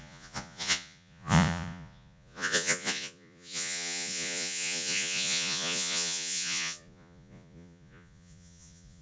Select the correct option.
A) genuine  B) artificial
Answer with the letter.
B